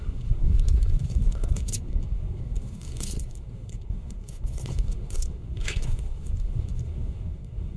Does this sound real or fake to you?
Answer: fake